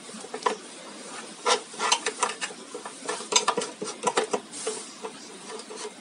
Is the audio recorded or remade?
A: remade